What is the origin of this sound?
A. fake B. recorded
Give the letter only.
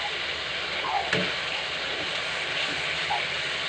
B